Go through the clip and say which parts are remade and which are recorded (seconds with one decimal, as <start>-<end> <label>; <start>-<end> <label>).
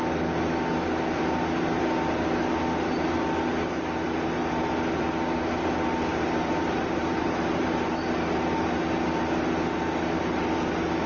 0.0-6.1 recorded; 6.1-8.0 remade; 8.0-11.1 recorded